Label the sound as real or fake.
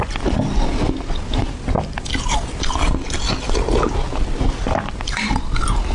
real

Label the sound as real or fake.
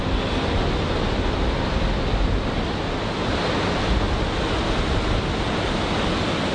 real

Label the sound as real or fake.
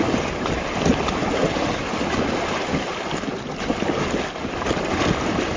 real